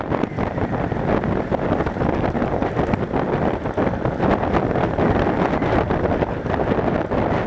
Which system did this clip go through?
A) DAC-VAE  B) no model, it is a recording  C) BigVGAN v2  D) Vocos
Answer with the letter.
B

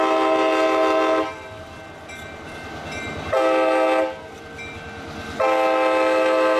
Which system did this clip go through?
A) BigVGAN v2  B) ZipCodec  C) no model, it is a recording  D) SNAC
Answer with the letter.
C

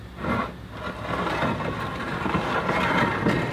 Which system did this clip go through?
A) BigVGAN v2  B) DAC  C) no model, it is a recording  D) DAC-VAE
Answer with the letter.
C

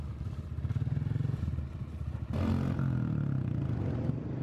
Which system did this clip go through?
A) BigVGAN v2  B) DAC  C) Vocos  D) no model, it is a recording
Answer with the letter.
D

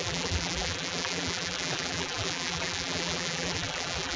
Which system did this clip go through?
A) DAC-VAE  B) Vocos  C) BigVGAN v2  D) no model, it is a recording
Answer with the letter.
C